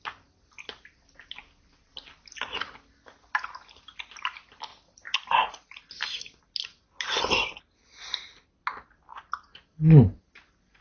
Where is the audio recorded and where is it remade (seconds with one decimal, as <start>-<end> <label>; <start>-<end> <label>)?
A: 0.0-10.8 recorded